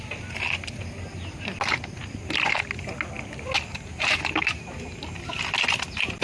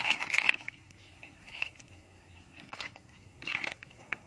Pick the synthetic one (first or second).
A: second